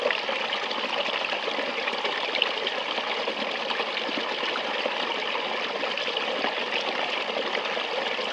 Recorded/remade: recorded